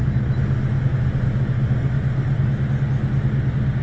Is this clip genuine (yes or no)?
yes